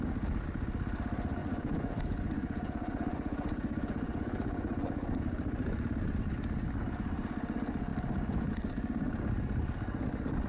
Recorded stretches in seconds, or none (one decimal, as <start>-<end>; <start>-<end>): 0.0-1.4; 5.2-10.5

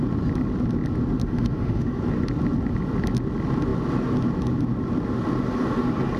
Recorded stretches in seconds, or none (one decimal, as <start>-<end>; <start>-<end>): 0.0-1.2; 2.0-6.2

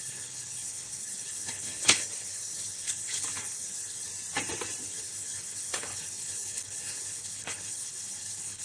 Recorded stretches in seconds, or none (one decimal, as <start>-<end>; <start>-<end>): 4.1-4.8

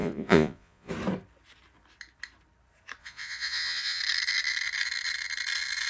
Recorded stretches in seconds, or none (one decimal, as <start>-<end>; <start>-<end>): 0.9-3.0; 4.0-5.9

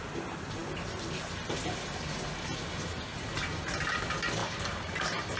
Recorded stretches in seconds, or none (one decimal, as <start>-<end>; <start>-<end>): 0.0-4.4

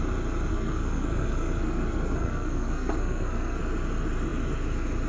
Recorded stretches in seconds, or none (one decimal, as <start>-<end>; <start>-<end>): 0.0-0.5; 3.6-5.1

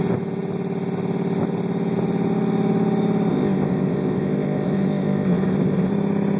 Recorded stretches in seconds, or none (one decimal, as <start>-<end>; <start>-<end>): 0.0-3.3; 5.9-6.4

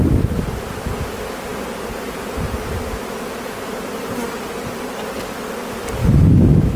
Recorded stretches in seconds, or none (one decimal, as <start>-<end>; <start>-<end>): 0.0-6.0